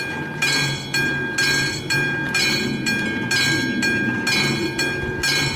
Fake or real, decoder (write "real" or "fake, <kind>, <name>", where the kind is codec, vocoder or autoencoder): real